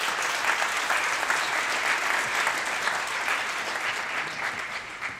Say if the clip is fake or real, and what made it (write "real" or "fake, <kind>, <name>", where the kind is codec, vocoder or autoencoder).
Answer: real